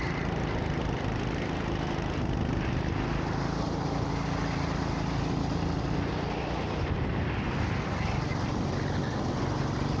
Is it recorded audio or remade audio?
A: recorded